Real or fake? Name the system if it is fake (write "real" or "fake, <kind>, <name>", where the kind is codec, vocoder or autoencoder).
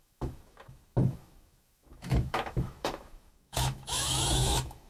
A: fake, autoencoder, DAC-VAE